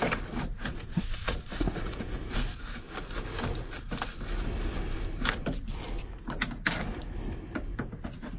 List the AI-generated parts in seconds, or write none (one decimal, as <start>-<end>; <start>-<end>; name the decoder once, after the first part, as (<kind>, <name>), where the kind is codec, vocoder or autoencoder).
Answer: 0.7-2.3 (vocoder, Vocos)